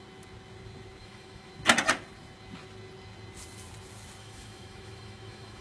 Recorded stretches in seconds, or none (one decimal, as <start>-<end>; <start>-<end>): 0.0-1.0; 1.5-4.2